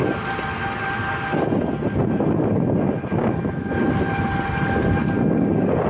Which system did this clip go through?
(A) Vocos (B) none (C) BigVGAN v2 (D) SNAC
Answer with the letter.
B